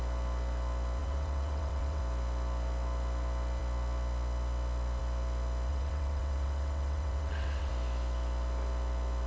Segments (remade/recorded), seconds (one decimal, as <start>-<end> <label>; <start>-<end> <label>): 0.0-1.0 recorded; 1.0-2.0 remade; 2.0-5.7 recorded; 5.7-7.7 remade; 7.7-9.3 recorded